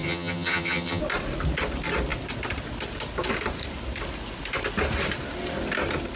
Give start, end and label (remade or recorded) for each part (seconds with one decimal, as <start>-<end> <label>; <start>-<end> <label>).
0.0-1.0 remade; 1.0-6.2 recorded